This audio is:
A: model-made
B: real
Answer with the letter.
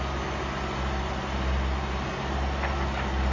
B